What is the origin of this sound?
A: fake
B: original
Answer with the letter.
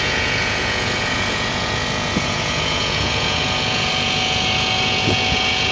A